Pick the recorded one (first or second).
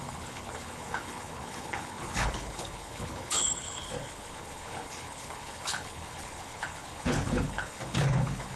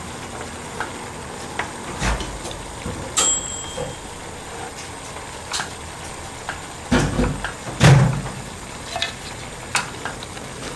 second